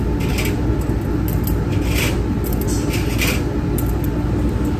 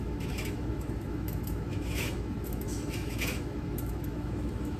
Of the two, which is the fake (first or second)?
second